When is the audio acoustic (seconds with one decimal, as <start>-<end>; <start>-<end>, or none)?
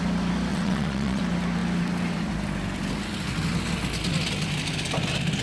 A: 0.0-0.5; 1.2-5.4